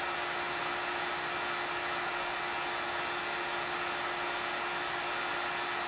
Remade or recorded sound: recorded